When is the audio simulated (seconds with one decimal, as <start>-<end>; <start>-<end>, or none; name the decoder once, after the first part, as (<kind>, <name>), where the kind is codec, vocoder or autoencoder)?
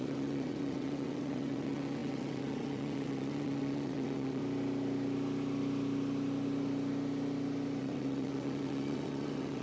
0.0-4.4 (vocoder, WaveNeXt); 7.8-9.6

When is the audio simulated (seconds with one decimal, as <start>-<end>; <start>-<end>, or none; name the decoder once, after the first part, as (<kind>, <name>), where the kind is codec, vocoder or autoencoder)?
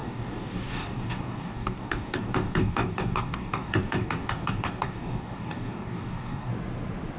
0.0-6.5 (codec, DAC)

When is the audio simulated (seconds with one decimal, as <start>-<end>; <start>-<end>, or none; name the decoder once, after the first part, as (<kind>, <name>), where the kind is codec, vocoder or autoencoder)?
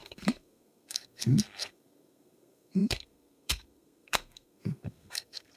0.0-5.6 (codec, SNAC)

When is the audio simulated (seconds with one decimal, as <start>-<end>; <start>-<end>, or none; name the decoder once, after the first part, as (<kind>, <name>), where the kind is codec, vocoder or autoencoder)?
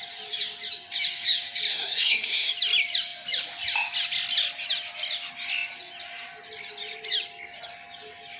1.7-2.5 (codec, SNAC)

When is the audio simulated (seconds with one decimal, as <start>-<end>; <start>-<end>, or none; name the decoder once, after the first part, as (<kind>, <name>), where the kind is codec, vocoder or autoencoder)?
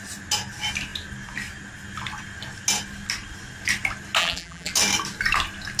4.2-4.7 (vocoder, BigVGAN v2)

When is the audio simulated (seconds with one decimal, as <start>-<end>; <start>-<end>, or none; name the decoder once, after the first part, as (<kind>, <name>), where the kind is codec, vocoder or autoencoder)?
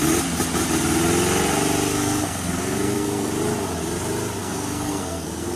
1.9-3.3 (codec, SNAC); 4.4-5.6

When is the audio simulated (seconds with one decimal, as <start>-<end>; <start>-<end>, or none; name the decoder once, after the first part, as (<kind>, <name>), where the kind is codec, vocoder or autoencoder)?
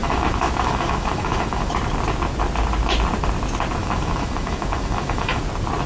0.0-1.7 (autoencoder, DAC-VAE); 3.8-5.4